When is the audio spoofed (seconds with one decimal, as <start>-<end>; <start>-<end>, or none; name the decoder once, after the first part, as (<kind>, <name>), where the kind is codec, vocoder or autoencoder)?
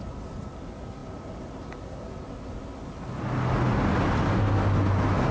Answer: none